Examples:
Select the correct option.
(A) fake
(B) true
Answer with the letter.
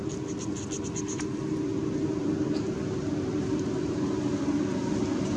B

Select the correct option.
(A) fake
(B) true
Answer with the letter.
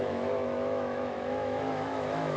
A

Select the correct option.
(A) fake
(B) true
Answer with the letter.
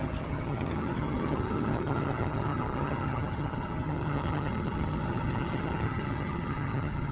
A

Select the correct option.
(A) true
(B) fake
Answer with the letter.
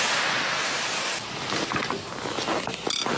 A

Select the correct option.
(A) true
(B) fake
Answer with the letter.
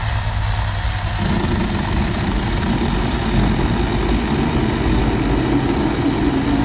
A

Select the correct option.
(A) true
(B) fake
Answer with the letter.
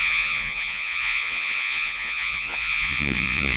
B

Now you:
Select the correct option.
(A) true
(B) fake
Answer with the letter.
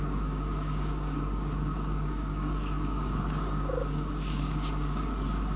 B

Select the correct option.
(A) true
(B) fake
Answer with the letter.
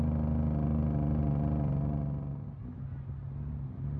A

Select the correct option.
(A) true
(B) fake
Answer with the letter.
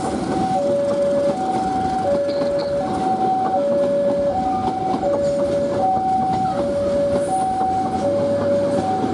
A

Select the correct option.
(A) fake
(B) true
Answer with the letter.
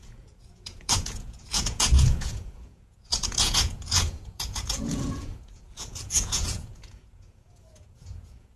A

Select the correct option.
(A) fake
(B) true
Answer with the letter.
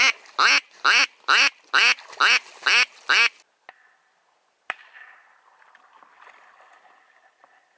B